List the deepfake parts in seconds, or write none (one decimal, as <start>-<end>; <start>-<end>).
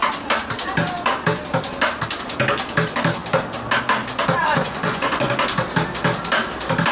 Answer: 4.4-5.3